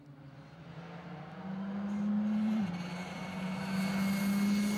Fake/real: real